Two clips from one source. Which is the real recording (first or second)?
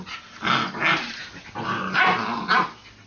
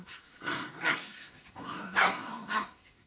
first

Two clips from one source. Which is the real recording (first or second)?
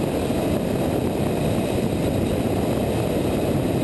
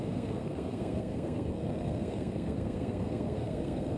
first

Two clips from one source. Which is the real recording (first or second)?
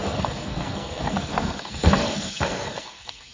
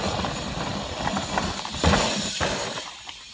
second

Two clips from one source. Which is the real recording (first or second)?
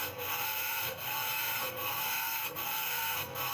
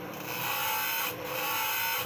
second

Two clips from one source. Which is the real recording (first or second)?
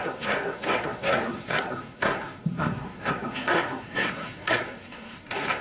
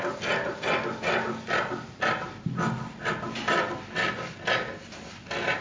second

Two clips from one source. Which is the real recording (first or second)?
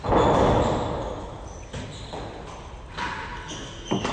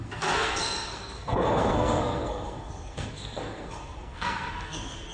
first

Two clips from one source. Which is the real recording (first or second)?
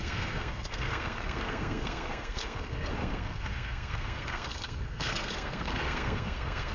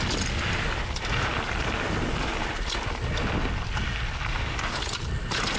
second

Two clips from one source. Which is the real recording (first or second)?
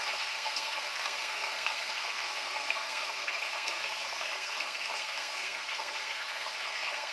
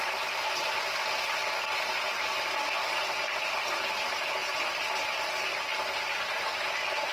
second